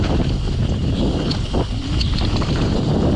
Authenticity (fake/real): real